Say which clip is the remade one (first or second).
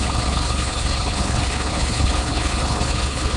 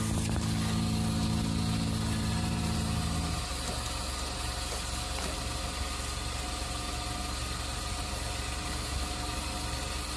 first